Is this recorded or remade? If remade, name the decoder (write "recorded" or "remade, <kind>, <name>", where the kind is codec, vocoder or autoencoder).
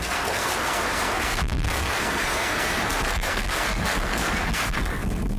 remade, codec, SNAC